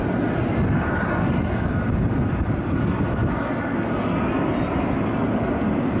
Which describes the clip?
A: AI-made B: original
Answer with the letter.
B